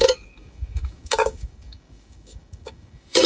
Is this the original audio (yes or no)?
no